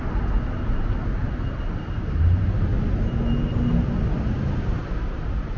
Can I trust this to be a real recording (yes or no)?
yes